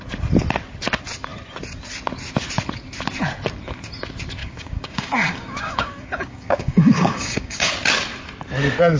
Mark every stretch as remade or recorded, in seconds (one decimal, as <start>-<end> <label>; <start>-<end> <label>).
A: 0.0-4.4 recorded; 4.4-7.7 remade; 7.7-9.0 recorded